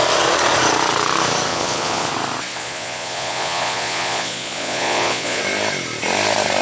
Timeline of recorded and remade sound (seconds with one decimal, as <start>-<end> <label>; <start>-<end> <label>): 0.0-1.5 recorded; 1.5-2.1 remade; 2.1-2.5 recorded; 2.5-5.4 remade; 5.4-6.6 recorded